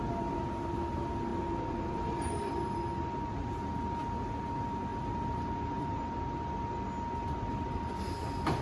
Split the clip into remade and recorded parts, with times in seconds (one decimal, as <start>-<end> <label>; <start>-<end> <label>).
0.0-1.3 recorded; 1.3-2.5 remade; 2.5-4.9 recorded; 4.9-6.1 remade; 6.1-8.6 recorded